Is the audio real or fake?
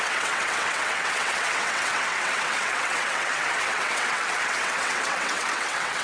fake